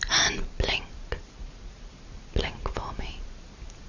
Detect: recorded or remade recorded